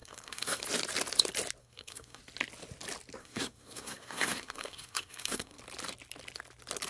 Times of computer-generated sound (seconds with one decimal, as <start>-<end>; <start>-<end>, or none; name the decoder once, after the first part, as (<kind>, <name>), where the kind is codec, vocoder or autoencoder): 0.0-0.6 (codec, SNAC); 1.6-2.2; 3.2-5.6